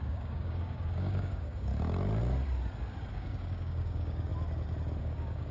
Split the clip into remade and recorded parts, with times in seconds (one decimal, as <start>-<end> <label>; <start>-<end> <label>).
0.0-1.7 remade; 1.7-3.1 recorded; 3.1-4.3 remade; 4.3-5.0 recorded; 5.0-5.5 remade